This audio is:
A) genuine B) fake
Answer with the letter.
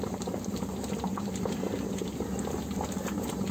A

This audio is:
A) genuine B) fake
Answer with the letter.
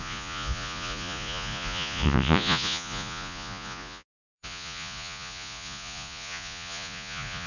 B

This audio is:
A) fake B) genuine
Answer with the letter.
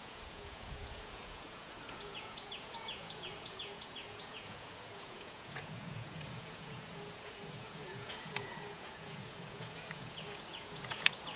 A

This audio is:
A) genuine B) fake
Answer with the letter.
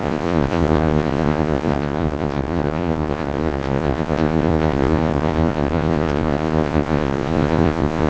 B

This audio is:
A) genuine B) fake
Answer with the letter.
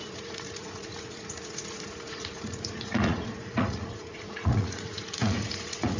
B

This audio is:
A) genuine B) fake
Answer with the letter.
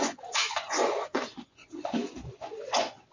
B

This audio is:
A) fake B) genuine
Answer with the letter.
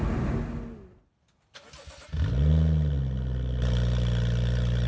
B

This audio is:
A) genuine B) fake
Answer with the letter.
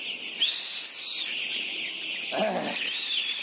A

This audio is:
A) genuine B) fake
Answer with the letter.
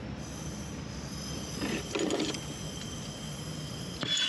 A